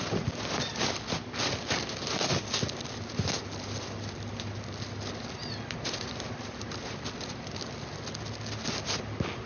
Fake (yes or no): no